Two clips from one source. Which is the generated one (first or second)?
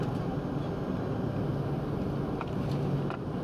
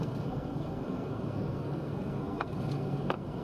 second